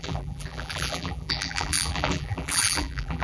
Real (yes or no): no